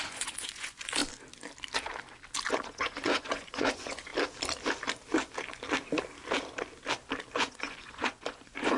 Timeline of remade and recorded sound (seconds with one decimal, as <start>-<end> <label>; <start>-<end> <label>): 0.0-1.0 remade; 1.0-2.5 recorded; 2.5-4.1 remade; 4.1-7.3 recorded; 7.3-8.8 remade